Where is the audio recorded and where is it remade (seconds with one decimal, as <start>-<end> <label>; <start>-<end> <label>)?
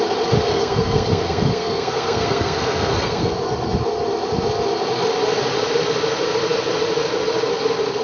0.0-0.5 recorded; 0.5-3.3 remade; 3.3-8.0 recorded